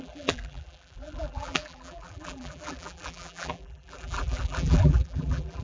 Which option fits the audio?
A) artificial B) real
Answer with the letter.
A